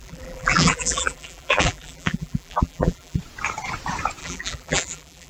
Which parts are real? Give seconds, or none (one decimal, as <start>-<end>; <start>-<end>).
3.2-4.2